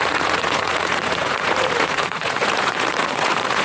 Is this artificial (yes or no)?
yes